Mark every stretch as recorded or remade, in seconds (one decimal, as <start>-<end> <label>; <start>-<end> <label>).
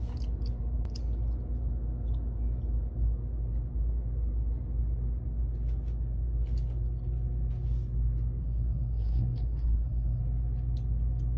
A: 0.0-8.4 recorded; 8.4-10.2 remade; 10.2-11.4 recorded